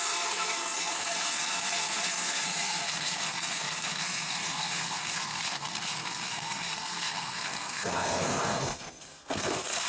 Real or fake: fake